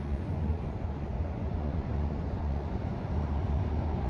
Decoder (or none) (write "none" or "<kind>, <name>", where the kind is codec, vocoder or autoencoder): vocoder, Vocos